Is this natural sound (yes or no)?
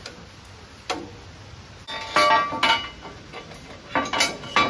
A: yes